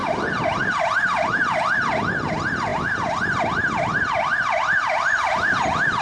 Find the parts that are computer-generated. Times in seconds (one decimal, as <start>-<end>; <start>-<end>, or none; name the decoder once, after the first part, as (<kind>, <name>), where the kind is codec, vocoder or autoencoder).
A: none